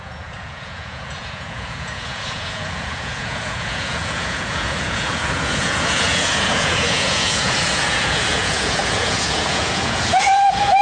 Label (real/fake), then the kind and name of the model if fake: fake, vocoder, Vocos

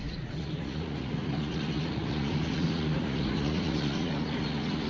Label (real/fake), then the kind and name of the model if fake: fake, vocoder, Vocos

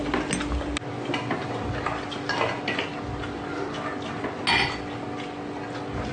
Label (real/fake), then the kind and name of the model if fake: real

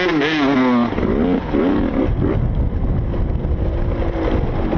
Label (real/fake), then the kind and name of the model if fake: real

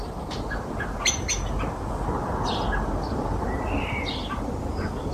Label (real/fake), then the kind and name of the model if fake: real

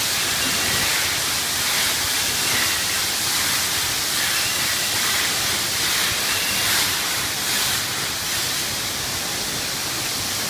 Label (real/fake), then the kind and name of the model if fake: real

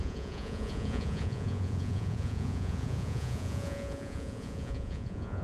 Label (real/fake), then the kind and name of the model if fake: fake, vocoder, Vocos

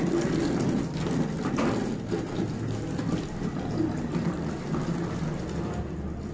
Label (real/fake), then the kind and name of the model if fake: real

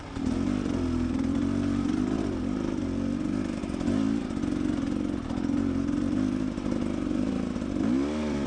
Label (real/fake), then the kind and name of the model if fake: real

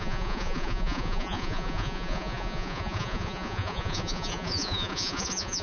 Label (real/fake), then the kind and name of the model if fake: fake, vocoder, Vocos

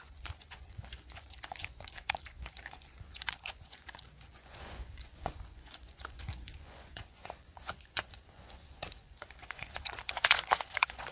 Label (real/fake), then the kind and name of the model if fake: fake, vocoder, Vocos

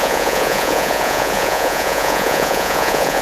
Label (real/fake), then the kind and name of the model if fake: fake, vocoder, Vocos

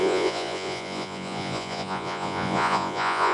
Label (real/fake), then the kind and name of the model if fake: fake, vocoder, Vocos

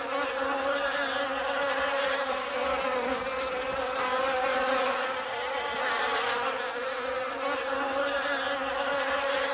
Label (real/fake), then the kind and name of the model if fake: real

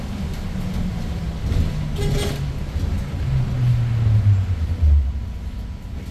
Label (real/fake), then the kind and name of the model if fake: real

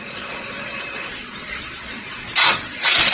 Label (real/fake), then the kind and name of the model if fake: fake, vocoder, Vocos